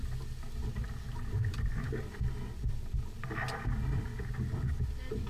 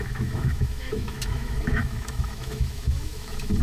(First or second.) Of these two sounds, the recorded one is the first